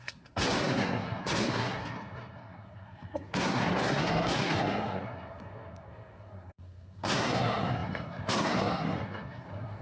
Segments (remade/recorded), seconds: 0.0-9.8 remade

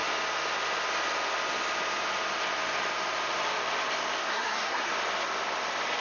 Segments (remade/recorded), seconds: 0.0-4.2 recorded; 4.2-4.9 remade; 4.9-6.0 recorded

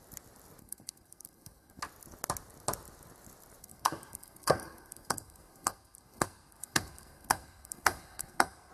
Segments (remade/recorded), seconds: 0.0-0.6 recorded; 0.6-1.8 remade; 1.8-3.6 recorded; 3.6-8.7 remade

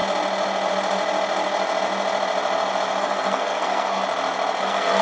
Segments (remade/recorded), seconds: 0.0-3.0 recorded; 3.0-4.0 remade; 4.0-4.6 recorded; 4.6-5.0 remade

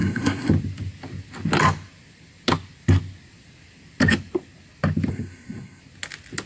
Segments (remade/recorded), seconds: 0.0-0.5 remade; 0.5-5.1 recorded; 5.1-5.8 remade; 5.8-6.5 recorded